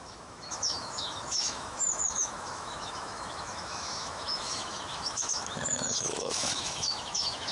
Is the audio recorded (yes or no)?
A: no